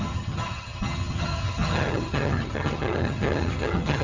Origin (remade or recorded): remade